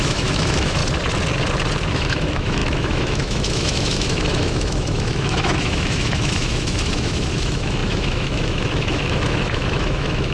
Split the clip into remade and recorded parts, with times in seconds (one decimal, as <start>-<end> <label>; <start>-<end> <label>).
0.0-0.8 remade; 0.8-1.9 recorded; 1.9-10.3 remade